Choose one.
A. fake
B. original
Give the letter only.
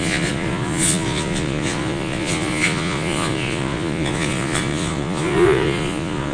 A